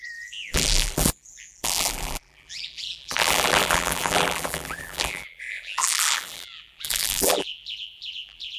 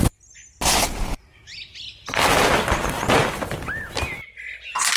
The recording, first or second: second